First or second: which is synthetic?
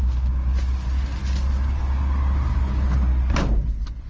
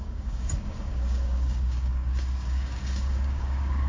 second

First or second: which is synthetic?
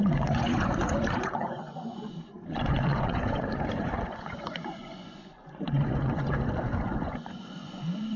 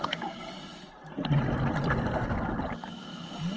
first